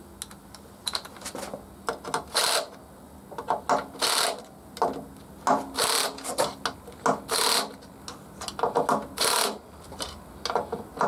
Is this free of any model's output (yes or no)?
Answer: yes